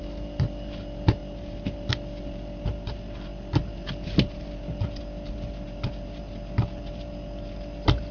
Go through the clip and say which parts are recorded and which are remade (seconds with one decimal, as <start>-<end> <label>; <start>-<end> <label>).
0.0-8.1 recorded